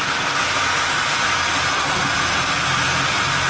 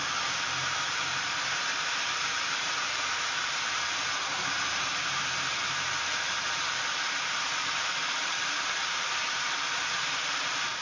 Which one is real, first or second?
first